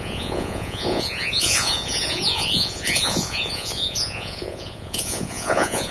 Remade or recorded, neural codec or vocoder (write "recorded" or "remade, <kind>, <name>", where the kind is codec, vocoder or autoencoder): remade, vocoder, Vocos